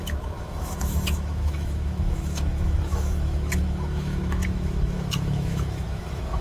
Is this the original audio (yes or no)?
no